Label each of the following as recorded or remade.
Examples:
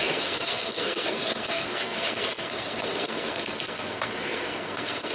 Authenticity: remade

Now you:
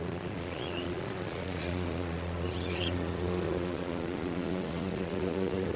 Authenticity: remade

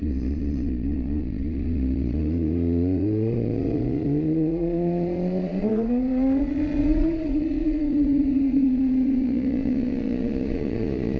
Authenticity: remade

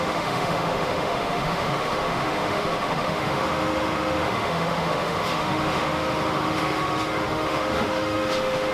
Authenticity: remade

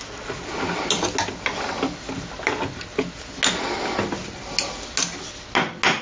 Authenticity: recorded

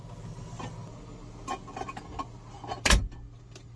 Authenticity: recorded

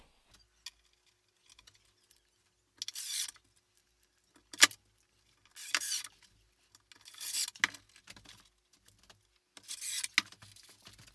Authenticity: recorded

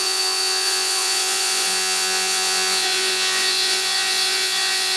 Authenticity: remade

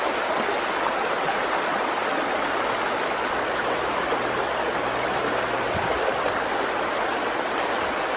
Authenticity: recorded